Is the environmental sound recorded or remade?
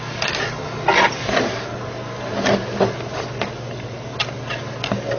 recorded